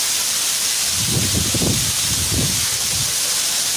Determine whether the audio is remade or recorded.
recorded